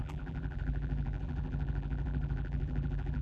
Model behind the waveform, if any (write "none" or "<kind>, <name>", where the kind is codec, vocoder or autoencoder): vocoder, BigVGAN v2